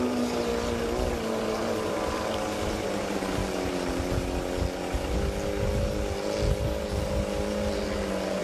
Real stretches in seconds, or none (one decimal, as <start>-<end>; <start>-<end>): 0.5-1.1; 3.4-8.4